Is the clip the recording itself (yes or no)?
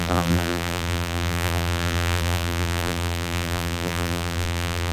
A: no